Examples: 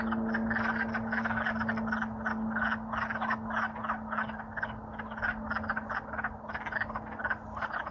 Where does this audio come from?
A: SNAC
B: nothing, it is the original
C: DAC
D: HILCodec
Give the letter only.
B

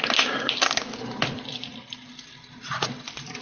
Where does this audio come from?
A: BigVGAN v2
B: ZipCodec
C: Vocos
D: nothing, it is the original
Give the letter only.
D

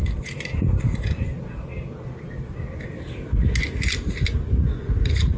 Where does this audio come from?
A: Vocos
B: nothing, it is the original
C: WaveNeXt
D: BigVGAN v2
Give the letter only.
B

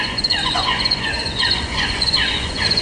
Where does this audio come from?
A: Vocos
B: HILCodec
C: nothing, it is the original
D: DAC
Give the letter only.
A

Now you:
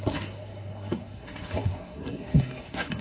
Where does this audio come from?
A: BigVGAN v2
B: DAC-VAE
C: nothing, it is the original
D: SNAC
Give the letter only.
D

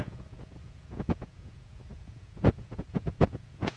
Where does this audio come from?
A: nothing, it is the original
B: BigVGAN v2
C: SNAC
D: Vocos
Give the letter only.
D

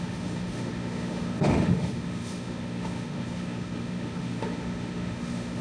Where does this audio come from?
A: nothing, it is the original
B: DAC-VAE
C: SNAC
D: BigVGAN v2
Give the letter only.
B